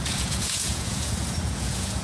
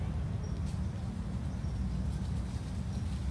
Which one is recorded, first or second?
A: second